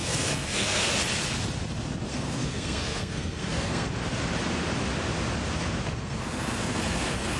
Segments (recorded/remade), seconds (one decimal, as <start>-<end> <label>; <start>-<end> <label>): 0.0-0.9 remade; 0.9-2.1 recorded; 2.1-3.9 remade; 3.9-5.8 recorded; 5.8-7.4 remade